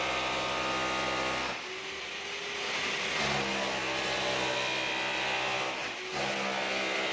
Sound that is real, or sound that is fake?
real